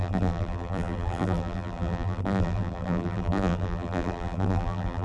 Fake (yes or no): yes